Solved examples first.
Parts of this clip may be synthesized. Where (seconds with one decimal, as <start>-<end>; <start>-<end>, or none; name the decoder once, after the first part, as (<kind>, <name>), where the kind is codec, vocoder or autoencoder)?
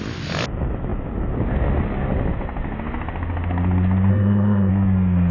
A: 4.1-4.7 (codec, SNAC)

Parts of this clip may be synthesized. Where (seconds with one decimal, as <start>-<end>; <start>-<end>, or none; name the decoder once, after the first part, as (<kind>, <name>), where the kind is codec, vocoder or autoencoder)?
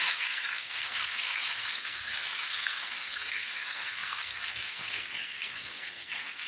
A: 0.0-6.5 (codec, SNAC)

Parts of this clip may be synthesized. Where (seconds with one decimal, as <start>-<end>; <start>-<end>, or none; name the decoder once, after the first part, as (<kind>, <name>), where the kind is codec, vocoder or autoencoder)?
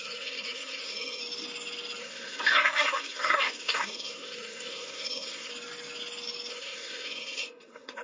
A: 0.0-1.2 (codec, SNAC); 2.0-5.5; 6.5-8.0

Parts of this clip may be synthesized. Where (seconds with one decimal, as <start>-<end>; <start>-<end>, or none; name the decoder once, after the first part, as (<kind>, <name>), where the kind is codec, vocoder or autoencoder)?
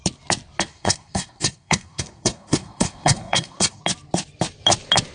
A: 0.7-3.8 (codec, SNAC)